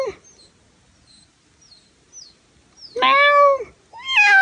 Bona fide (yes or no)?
yes